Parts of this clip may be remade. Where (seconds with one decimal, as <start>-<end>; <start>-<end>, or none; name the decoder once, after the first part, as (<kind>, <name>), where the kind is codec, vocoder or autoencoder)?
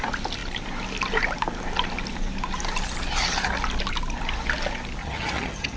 5.0-5.8 (vocoder, HiFi-GAN)